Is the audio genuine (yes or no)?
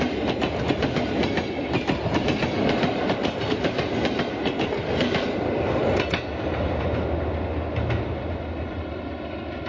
yes